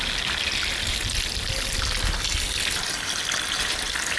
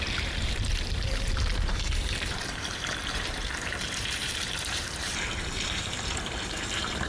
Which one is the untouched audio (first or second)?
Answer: first